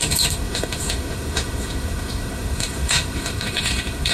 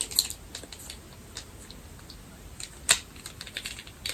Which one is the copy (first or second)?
first